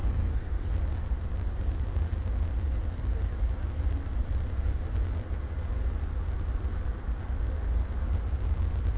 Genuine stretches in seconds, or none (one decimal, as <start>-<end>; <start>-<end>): 0.7-9.0